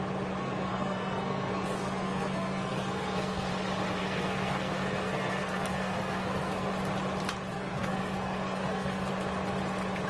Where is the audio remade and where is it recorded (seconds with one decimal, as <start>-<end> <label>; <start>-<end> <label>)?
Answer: 0.0-0.4 recorded; 0.4-3.5 remade; 3.5-4.0 recorded; 4.0-6.7 remade; 6.7-7.5 recorded; 7.5-9.1 remade; 9.1-10.1 recorded